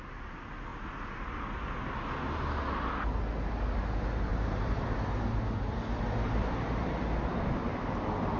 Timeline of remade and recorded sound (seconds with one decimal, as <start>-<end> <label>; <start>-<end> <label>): 0.0-0.7 recorded; 0.7-1.4 remade; 1.4-4.3 recorded; 4.3-4.8 remade; 4.8-8.4 recorded